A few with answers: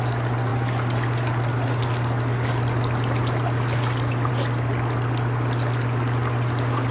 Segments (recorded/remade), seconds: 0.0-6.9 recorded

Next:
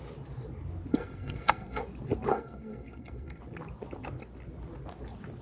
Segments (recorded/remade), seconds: 0.0-0.9 recorded; 0.9-1.8 remade; 1.8-2.3 recorded; 2.3-3.4 remade; 3.4-5.4 recorded